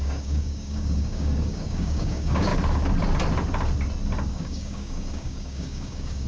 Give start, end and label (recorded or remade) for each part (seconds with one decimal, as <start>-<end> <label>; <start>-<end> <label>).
0.0-2.5 remade; 2.5-4.3 recorded; 4.3-6.3 remade